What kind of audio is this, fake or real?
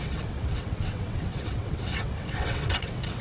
fake